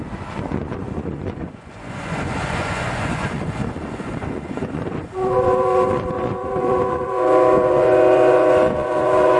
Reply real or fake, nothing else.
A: fake